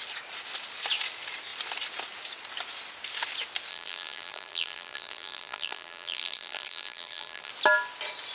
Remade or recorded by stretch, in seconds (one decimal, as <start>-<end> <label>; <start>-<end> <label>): 0.0-3.7 recorded; 3.7-7.5 remade; 7.5-8.3 recorded